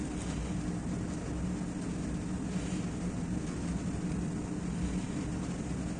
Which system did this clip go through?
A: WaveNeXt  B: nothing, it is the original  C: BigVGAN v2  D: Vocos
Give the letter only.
B